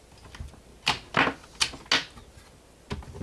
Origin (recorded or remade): recorded